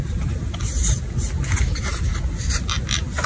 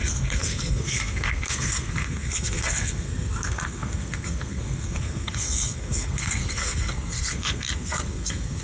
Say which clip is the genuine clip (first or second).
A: first